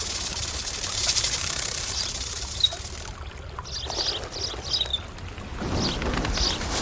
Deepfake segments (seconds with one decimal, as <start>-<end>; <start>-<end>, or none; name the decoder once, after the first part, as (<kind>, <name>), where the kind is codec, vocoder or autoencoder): 0.4-2.6 (vocoder, BigVGAN v2)